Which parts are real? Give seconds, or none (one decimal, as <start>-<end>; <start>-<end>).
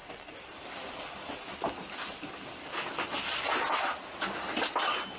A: 0.0-5.2